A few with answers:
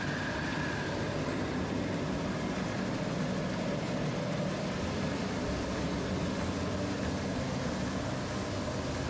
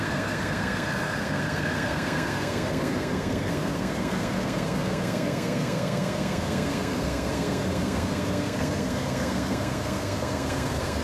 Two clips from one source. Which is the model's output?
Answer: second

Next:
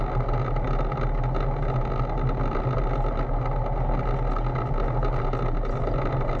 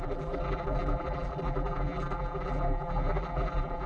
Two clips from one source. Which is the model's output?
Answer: second